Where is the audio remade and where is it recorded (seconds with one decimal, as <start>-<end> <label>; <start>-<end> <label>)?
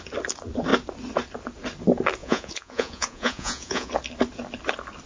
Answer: 0.0-2.2 recorded; 2.2-3.9 remade; 3.9-5.1 recorded